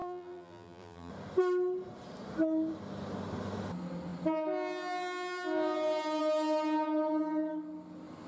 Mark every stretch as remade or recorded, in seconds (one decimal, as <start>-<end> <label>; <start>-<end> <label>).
0.0-1.1 remade; 1.1-8.3 recorded